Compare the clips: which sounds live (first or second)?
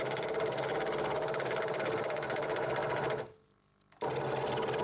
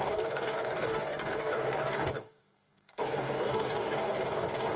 first